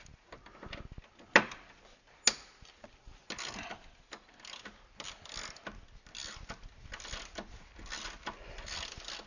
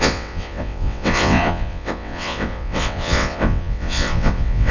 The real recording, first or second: first